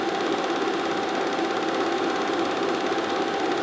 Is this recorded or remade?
recorded